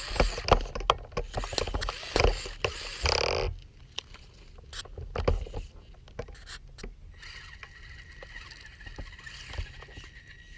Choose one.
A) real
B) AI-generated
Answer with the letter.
A